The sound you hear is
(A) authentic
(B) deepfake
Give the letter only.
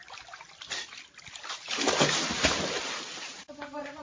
A